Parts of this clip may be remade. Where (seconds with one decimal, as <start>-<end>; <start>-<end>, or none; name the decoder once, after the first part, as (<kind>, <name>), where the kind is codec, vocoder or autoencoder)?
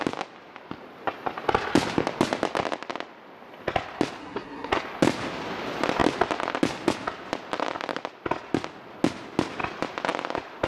4.2-4.7 (codec, SNAC)